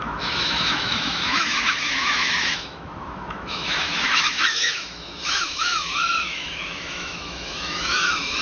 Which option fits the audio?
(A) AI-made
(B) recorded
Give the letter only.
A